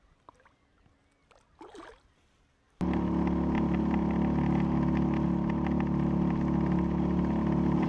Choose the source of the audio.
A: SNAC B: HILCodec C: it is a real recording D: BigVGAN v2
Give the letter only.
C